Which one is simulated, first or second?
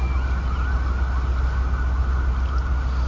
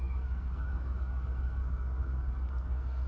second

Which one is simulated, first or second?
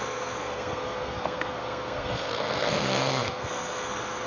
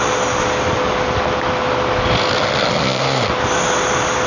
first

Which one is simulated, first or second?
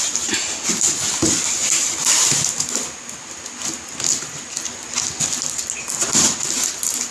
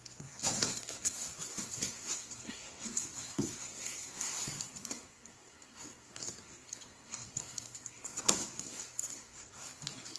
second